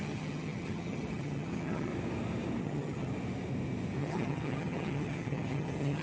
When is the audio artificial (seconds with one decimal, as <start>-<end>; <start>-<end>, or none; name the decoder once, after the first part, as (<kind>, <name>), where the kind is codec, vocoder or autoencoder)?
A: 0.0-1.9 (vocoder, HiFi-GAN); 2.6-3.1; 4.0-6.0

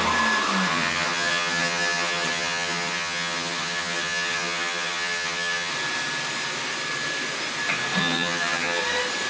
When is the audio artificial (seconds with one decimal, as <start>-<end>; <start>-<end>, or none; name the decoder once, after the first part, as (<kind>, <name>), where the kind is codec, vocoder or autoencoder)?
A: 0.7-5.7 (vocoder, HiFi-GAN); 8.0-8.8

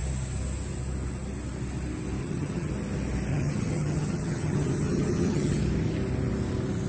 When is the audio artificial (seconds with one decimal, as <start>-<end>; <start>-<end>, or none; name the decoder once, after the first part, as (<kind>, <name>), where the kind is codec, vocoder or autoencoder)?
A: 2.2-2.7 (vocoder, HiFi-GAN); 3.3-5.6

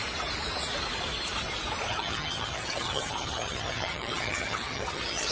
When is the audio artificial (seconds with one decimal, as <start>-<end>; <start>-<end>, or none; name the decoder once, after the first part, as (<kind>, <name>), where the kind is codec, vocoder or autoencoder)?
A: 1.9-5.3 (vocoder, HiFi-GAN)

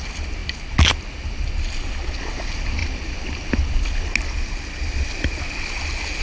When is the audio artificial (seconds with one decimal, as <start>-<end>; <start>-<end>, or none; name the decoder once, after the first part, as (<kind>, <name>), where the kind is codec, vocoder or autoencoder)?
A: none

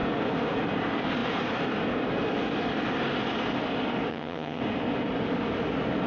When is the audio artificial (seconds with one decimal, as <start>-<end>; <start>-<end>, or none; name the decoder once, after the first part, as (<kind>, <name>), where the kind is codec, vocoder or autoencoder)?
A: 4.1-4.6 (vocoder, HiFi-GAN)